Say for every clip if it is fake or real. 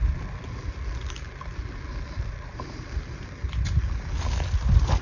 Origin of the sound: real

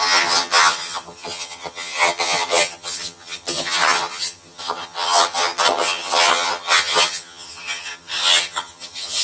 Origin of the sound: fake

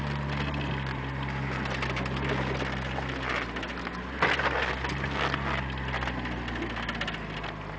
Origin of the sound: real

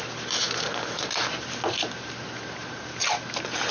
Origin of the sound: real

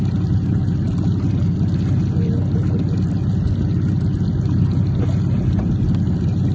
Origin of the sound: real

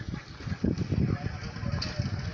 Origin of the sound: real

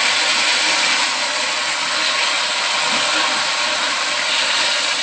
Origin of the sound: real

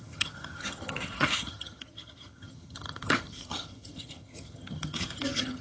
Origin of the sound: fake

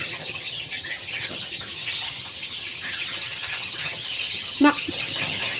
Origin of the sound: fake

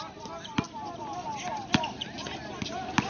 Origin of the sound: real